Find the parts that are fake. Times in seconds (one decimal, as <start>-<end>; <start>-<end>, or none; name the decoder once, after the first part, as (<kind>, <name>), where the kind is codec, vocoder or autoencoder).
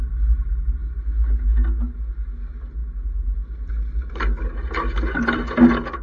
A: none